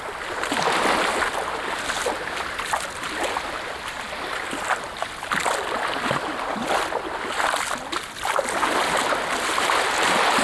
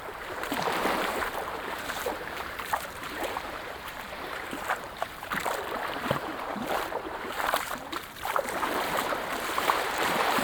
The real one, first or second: first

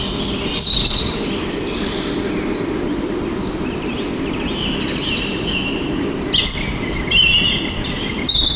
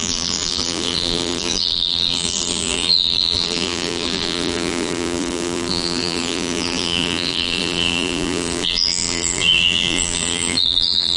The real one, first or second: first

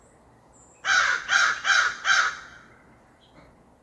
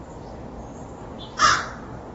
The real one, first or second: first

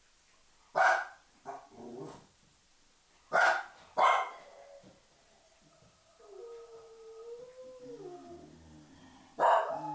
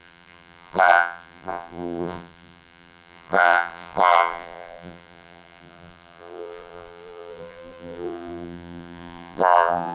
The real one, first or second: first